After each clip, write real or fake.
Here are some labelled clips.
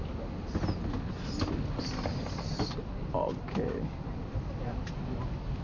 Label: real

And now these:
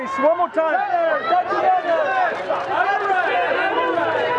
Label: real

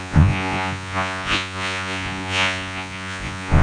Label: fake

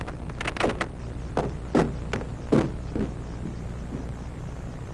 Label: real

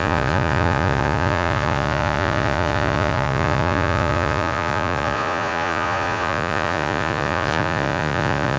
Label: fake